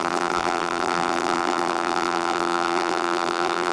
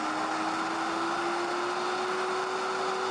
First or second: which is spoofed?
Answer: first